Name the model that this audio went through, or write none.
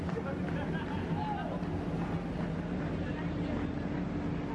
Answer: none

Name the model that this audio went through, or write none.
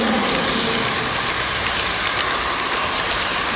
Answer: vocoder, BigVGAN v2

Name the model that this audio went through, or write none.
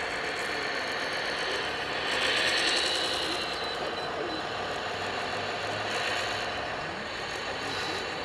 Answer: none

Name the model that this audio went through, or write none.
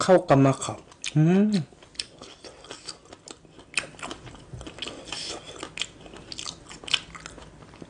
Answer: none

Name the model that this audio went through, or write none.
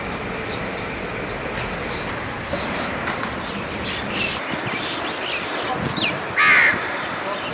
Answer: vocoder, BigVGAN v2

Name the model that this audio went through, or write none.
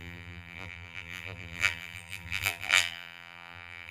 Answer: vocoder, BigVGAN v2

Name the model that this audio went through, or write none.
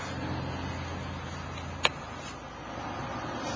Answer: none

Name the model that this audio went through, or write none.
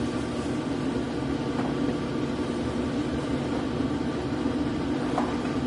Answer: vocoder, BigVGAN v2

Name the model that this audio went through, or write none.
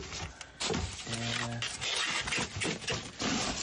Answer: none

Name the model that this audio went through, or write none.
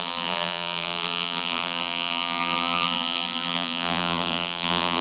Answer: vocoder, BigVGAN v2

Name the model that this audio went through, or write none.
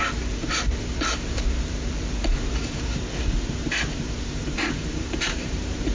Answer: vocoder, BigVGAN v2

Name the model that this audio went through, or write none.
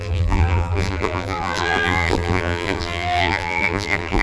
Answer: vocoder, BigVGAN v2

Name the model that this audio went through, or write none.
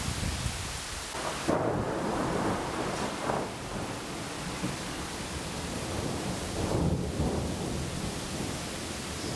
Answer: vocoder, BigVGAN v2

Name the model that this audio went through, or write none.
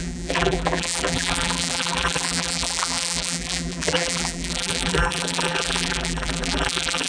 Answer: vocoder, BigVGAN v2